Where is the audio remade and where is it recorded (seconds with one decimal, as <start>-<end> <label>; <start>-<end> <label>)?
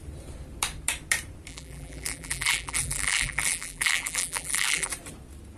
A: 0.0-1.5 recorded; 1.5-4.9 remade; 4.9-5.6 recorded